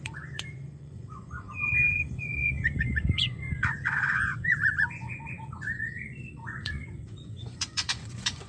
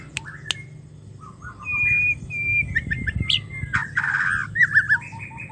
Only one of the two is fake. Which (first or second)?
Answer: first